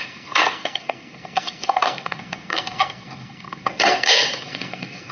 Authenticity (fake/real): fake